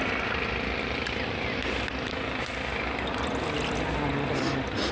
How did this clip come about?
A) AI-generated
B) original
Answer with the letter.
B